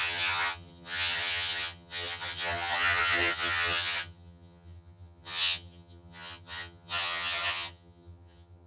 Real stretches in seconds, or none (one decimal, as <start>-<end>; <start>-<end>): none